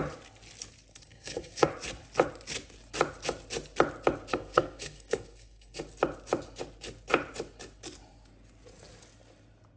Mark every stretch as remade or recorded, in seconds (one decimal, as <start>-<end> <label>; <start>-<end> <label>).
0.0-0.9 recorded; 0.9-1.7 remade; 1.7-4.3 recorded; 4.3-5.8 remade; 5.8-9.8 recorded